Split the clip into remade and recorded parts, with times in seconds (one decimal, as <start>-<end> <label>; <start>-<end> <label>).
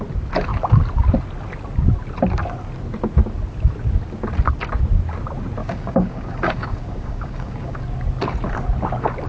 0.0-5.6 recorded; 5.6-7.8 remade; 7.8-9.3 recorded